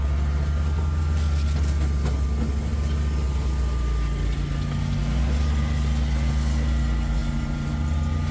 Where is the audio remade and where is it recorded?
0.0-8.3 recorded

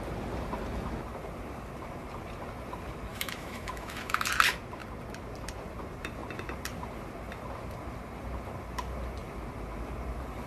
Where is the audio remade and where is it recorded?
0.0-3.1 recorded; 3.1-4.3 remade; 4.3-10.5 recorded

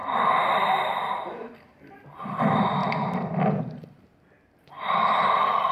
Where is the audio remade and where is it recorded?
0.0-5.7 recorded

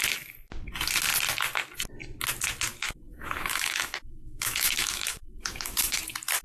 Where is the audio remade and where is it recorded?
0.0-2.8 recorded; 2.8-6.0 remade; 6.0-6.4 recorded

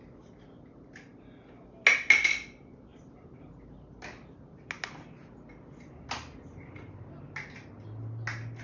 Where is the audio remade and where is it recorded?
0.0-8.6 recorded

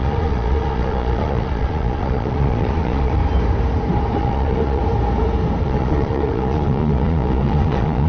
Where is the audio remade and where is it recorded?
0.0-3.2 remade; 3.2-4.2 recorded; 4.2-4.8 remade; 4.8-5.6 recorded; 5.6-8.1 remade

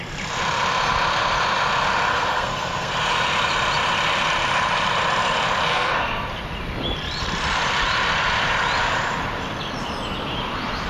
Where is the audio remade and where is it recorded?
0.0-2.1 recorded; 2.1-2.9 remade; 2.9-5.7 recorded; 5.7-6.3 remade; 6.3-10.9 recorded